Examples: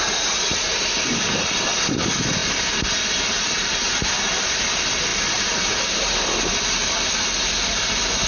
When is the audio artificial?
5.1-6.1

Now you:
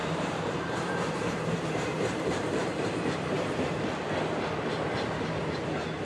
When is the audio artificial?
0.0-3.7

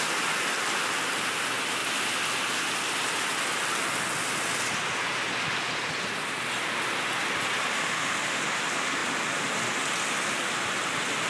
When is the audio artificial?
7.7-8.4

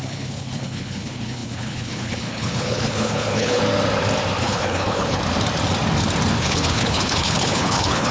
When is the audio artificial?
0.0-3.6; 4.4-5.2; 6.4-8.1

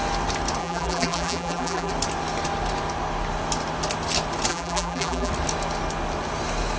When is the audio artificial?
0.6-1.9; 4.5-5.3

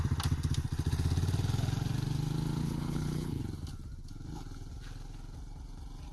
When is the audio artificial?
2.6-3.4